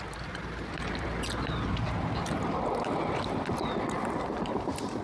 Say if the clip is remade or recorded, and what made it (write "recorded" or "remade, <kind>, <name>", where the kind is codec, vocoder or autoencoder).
recorded